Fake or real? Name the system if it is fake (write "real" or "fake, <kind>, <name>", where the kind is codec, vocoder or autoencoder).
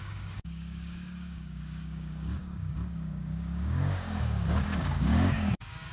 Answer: fake, codec, DAC